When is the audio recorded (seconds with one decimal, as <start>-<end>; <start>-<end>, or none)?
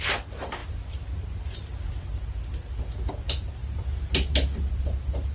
0.0-5.3